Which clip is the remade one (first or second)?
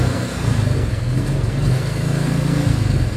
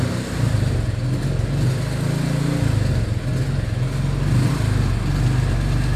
first